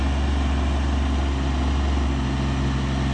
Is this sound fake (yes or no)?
no